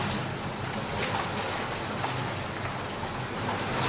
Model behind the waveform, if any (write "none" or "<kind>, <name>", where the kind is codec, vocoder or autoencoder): none